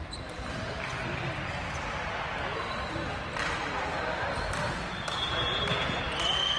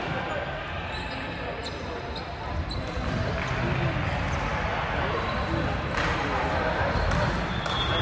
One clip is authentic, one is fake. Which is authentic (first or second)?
second